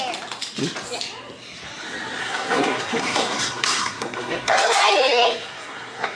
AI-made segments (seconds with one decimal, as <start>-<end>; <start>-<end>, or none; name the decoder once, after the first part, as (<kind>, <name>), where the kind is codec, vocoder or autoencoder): 2.2-6.2 (codec, SNAC)